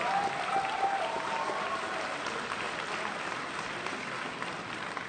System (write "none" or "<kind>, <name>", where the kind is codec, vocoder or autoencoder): none